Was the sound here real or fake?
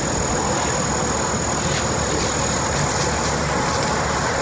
real